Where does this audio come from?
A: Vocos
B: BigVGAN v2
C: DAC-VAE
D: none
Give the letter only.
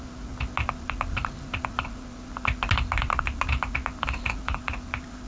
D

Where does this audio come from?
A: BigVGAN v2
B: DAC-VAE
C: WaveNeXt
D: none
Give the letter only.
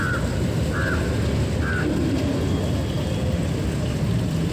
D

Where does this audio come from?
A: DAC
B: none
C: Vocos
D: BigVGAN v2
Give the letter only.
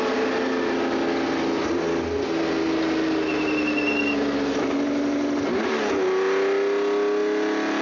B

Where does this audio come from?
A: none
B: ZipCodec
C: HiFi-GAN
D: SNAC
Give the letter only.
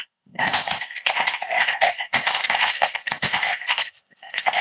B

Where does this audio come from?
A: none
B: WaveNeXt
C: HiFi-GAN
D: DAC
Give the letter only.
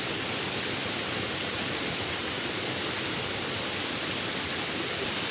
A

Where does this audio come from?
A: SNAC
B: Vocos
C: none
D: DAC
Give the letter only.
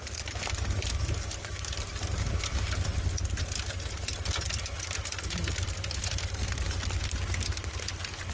C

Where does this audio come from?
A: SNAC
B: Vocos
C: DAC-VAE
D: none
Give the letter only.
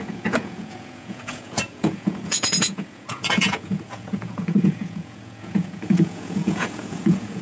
B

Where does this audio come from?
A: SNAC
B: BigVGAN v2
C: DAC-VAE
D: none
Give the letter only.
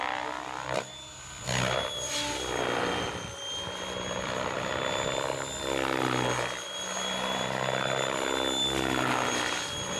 D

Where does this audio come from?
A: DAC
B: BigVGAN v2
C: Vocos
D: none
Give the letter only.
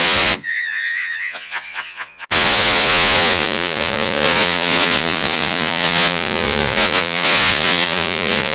C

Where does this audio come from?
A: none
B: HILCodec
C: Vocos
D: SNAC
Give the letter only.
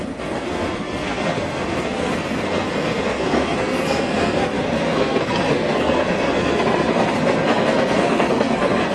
D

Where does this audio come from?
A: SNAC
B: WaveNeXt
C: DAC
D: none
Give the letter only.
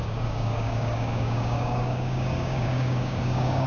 C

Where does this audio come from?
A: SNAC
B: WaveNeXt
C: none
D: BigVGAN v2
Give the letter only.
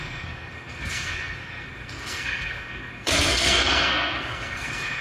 A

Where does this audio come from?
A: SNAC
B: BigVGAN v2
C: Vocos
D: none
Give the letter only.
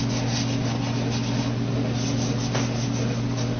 D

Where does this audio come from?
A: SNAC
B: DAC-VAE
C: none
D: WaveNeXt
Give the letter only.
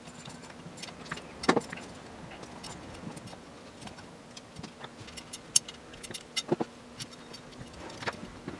C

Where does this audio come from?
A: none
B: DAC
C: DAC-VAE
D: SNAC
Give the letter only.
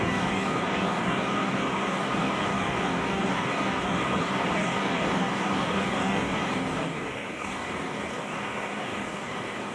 B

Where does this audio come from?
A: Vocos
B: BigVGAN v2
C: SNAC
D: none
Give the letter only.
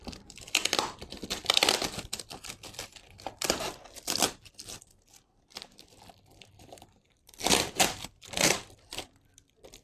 B